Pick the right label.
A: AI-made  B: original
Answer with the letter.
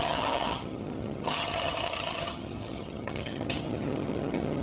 A